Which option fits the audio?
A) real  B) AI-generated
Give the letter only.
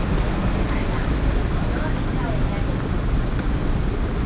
A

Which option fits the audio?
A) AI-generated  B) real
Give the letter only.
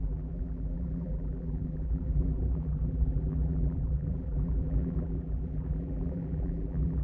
A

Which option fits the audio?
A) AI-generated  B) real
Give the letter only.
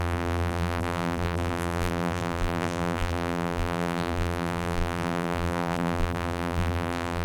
A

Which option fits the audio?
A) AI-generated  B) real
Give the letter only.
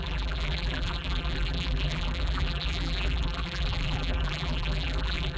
A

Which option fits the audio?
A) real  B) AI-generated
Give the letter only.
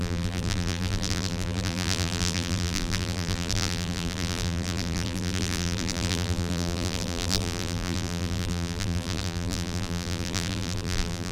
B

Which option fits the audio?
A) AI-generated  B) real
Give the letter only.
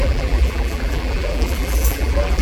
A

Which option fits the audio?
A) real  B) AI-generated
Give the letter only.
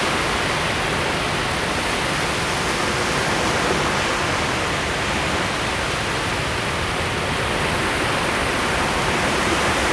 A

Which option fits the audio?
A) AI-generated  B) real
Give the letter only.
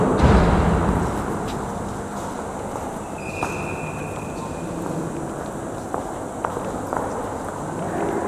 B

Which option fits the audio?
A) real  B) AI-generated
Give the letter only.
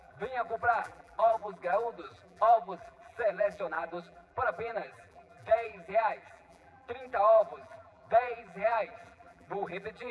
B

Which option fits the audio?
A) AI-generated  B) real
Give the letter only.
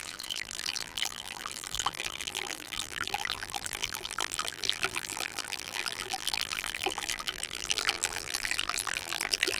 A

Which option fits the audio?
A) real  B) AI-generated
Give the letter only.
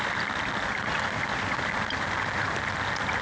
A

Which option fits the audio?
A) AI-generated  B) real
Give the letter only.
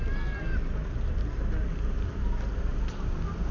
B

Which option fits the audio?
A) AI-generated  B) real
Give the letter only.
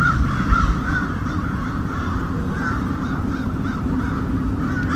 A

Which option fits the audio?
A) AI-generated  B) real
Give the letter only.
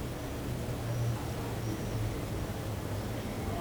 B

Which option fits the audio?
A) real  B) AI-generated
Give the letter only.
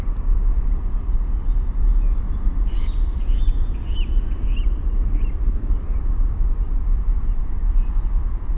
B